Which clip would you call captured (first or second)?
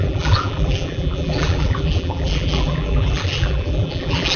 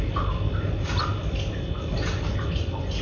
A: second